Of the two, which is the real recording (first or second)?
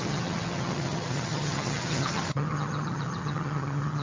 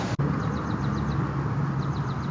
second